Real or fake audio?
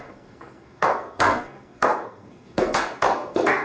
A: fake